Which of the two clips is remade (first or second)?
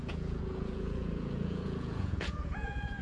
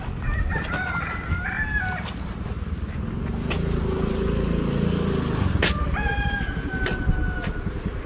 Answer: first